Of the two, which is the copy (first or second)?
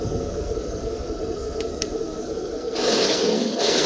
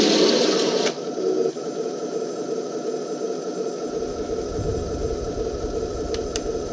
first